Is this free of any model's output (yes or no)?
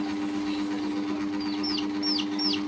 yes